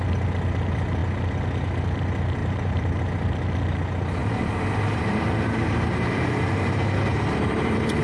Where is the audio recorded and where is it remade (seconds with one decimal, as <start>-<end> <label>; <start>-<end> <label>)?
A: 0.0-2.4 recorded; 2.4-3.0 remade; 3.0-4.2 recorded; 4.2-8.0 remade

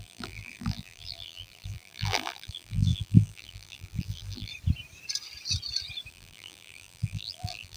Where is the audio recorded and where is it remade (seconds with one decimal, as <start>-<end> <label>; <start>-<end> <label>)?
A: 0.0-4.5 remade; 4.5-6.1 recorded; 6.1-7.8 remade

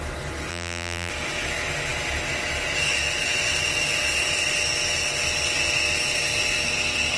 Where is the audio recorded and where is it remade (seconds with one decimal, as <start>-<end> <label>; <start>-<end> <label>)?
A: 0.0-0.5 recorded; 0.5-1.1 remade; 1.1-7.2 recorded

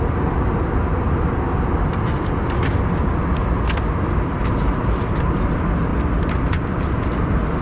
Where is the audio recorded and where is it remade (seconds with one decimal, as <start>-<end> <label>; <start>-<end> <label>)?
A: 0.0-4.4 remade; 4.4-5.2 recorded; 5.2-5.9 remade; 5.9-6.4 recorded; 6.4-7.6 remade

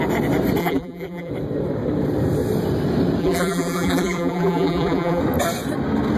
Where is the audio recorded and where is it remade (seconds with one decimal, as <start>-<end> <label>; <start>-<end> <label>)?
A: 0.0-0.6 recorded; 0.6-1.3 remade; 1.3-3.2 recorded; 3.2-5.2 remade; 5.2-6.2 recorded

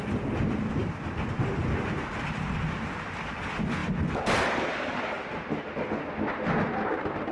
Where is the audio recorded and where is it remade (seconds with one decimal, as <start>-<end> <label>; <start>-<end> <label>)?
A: 0.0-3.8 recorded; 3.8-5.0 remade; 5.0-7.3 recorded

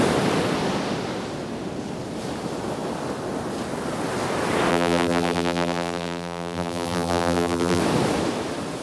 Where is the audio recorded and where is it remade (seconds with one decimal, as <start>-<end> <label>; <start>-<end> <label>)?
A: 0.0-4.7 recorded; 4.7-7.8 remade; 7.8-8.8 recorded